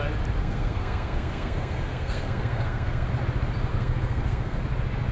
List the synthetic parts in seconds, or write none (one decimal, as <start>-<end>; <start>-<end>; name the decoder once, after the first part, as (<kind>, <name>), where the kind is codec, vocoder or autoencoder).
0.4-3.1 (codec, SNAC); 3.7-4.6